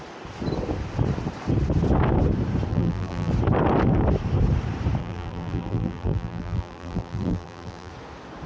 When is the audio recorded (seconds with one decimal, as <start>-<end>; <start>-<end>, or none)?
0.0-2.7; 3.3-5.0; 7.9-8.5